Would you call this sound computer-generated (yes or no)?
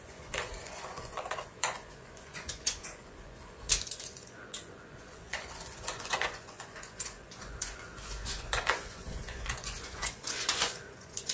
yes